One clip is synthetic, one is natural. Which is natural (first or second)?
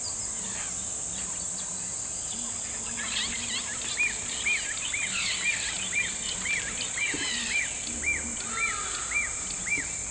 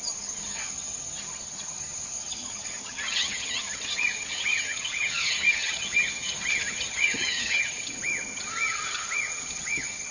first